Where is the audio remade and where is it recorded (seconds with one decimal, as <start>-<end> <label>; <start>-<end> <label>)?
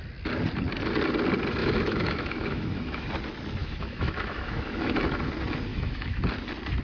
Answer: 0.0-1.6 recorded; 1.6-3.1 remade; 3.1-3.6 recorded; 3.6-5.2 remade; 5.2-5.7 recorded; 5.7-6.2 remade; 6.2-6.8 recorded